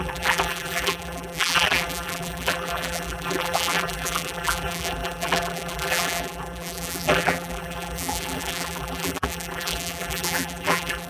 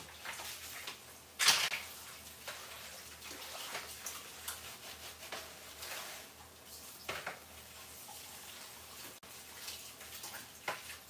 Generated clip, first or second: first